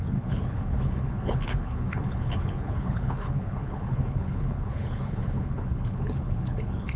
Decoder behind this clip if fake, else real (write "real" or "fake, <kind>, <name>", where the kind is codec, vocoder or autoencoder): fake, codec, HILCodec